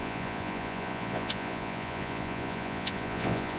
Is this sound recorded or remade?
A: remade